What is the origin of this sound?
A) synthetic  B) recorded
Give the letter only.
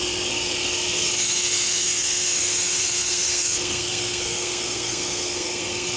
A